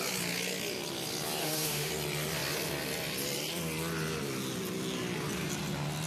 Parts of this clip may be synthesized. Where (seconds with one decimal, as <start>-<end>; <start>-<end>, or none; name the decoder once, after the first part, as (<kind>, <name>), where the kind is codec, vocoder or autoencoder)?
1.4-1.9 (autoencoder, DAC-VAE)